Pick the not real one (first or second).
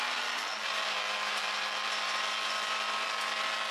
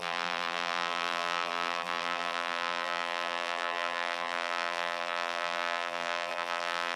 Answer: second